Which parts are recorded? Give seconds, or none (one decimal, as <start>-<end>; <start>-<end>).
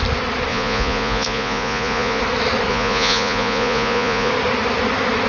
0.0-0.5; 2.2-2.7; 4.3-5.3